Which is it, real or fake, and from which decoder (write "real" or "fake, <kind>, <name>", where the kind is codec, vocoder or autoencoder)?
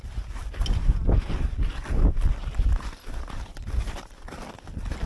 fake, vocoder, BigVGAN v2